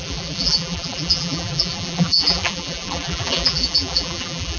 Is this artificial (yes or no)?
yes